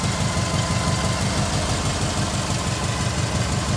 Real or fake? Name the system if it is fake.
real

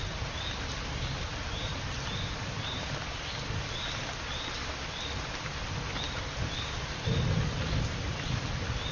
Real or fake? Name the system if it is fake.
real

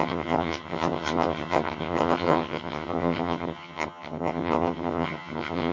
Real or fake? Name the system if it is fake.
fake, vocoder, HiFi-GAN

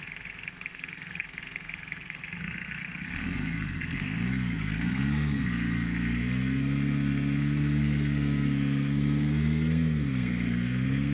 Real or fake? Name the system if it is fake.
fake, codec, SNAC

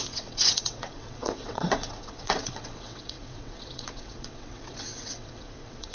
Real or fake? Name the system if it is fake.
fake, vocoder, WaveNeXt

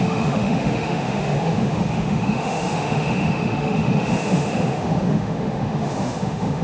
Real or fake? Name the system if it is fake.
fake, autoencoder, DAC-VAE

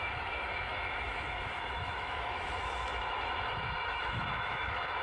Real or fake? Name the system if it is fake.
fake, autoencoder, DAC-VAE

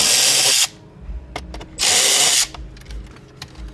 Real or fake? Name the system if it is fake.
real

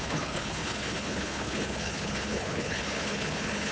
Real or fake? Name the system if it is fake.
fake, codec, HILCodec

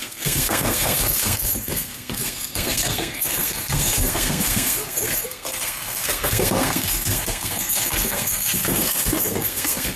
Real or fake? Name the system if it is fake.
fake, codec, SNAC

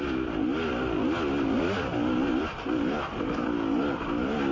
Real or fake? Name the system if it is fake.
real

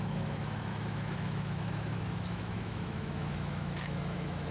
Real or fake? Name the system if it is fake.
fake, autoencoder, DAC-VAE